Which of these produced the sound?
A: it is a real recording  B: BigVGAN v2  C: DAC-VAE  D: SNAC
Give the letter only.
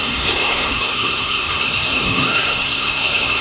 D